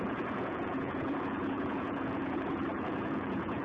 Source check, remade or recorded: remade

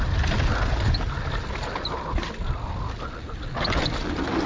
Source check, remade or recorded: recorded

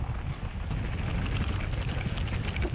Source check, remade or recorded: recorded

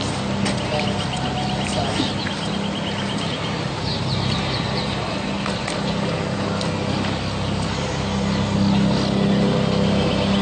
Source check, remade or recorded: recorded